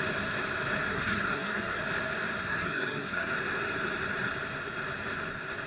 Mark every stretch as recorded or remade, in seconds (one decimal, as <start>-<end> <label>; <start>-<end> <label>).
0.0-0.9 recorded; 0.9-1.8 remade; 1.8-2.4 recorded; 2.4-3.3 remade; 3.3-5.7 recorded